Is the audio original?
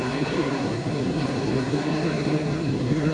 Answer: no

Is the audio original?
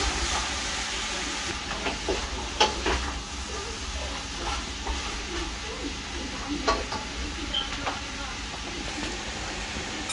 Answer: yes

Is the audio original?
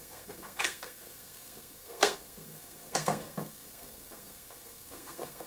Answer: no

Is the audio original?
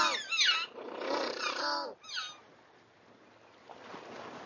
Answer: yes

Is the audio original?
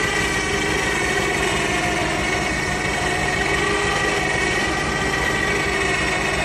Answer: yes